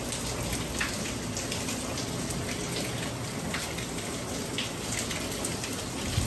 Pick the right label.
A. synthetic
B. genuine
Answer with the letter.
B